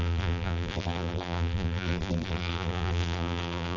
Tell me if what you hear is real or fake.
fake